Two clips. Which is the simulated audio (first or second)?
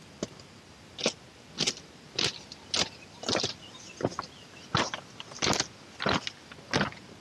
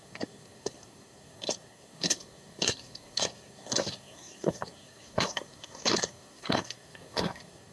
second